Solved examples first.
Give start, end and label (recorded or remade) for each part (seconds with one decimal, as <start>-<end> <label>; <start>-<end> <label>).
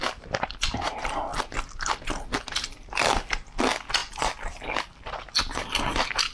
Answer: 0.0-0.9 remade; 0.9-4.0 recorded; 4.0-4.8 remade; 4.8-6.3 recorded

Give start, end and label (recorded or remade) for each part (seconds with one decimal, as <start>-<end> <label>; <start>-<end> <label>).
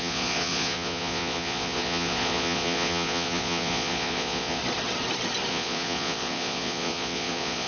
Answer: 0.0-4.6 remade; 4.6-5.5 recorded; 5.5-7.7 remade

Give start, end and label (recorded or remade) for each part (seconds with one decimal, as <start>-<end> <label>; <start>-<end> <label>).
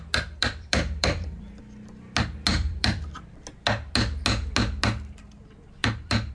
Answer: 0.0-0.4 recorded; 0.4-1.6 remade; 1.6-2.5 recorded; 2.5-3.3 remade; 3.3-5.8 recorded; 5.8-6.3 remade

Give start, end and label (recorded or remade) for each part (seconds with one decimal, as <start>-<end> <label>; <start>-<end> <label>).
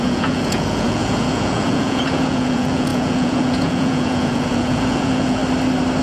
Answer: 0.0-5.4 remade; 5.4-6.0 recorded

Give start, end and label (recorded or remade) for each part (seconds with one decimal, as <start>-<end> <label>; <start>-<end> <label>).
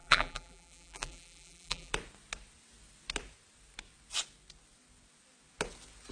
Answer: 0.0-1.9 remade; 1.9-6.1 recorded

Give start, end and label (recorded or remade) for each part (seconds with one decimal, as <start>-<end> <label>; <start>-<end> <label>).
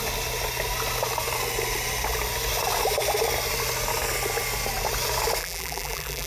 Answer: 0.0-5.4 recorded; 5.4-6.3 remade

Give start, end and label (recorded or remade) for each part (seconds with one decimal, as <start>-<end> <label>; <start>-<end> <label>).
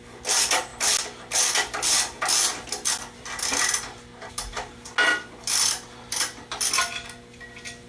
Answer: 0.0-7.9 recorded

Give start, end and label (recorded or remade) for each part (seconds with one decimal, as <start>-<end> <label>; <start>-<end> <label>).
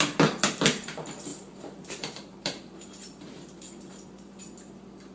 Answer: 0.0-1.3 recorded; 1.3-4.4 remade; 4.4-5.1 recorded